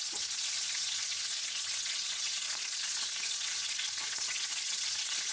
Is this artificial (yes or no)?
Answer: yes